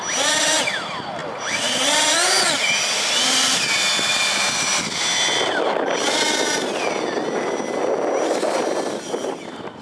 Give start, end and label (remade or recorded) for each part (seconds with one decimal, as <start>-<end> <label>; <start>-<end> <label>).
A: 0.0-9.8 recorded